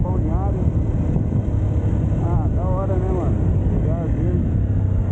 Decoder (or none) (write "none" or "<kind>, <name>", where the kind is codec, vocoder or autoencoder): none